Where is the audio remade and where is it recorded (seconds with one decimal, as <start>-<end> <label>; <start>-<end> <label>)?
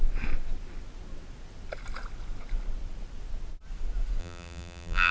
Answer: 0.0-4.2 recorded; 4.2-5.1 remade